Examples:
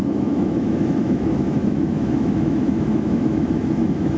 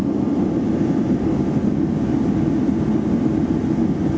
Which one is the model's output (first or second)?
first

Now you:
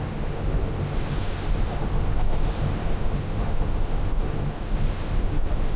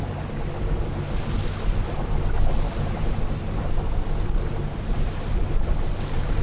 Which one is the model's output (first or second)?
first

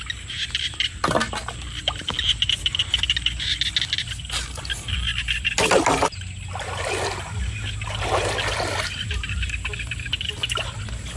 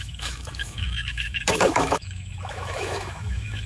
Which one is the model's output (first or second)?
second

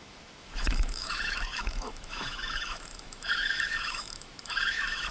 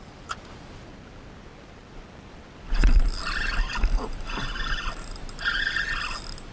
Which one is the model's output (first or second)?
first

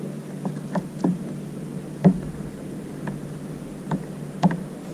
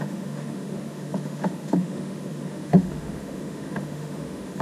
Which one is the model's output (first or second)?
second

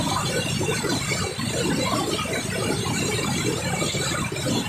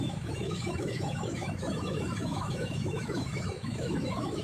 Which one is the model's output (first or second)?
second